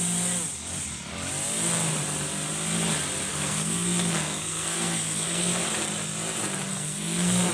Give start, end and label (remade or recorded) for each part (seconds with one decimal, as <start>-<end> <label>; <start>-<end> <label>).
0.0-3.3 recorded; 3.3-5.7 remade; 5.7-6.7 recorded; 6.7-7.5 remade